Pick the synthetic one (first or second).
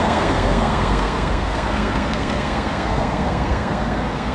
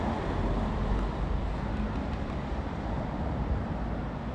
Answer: first